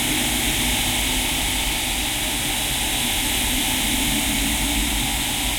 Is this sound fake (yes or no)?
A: no